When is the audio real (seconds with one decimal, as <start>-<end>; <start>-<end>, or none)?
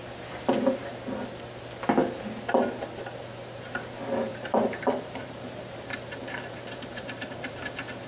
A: 0.0-4.3; 7.6-8.1